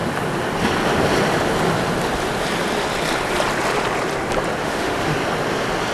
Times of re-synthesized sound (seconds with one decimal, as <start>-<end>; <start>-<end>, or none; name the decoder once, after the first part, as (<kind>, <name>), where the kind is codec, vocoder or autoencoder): 4.6-5.2 (autoencoder, DAC-VAE)